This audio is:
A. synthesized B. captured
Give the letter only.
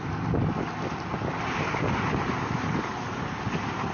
B